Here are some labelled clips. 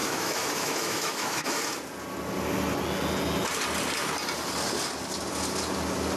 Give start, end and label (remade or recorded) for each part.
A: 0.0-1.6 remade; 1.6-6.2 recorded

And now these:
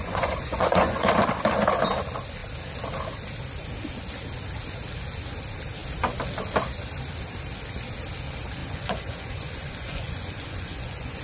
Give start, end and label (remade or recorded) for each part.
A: 0.0-1.1 remade; 1.1-8.6 recorded; 8.6-11.2 remade

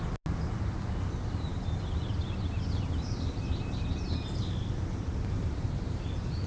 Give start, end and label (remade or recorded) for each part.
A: 0.0-6.5 recorded

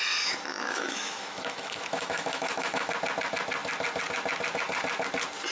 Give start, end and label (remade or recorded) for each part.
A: 0.0-0.5 recorded; 0.5-2.9 remade; 2.9-5.5 recorded